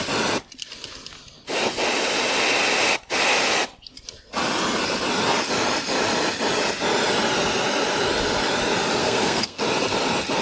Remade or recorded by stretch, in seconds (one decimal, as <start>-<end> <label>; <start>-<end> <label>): 0.0-9.0 recorded; 9.0-9.6 remade; 9.6-10.4 recorded